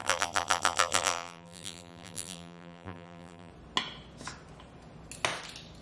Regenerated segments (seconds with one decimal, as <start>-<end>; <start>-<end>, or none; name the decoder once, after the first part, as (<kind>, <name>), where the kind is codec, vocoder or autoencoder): 0.0-3.5 (vocoder, BigVGAN v2)